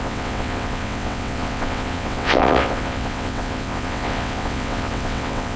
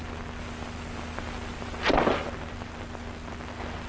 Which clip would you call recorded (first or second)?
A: second